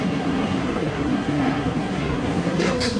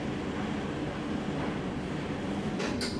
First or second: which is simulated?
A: first